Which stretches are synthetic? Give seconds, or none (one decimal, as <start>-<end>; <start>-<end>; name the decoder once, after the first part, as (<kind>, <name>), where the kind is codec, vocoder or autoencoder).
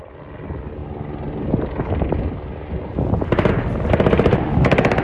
4.3-5.0 (vocoder, BigVGAN v2)